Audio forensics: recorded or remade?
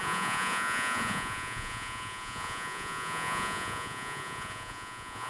remade